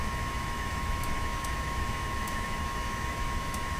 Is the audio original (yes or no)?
no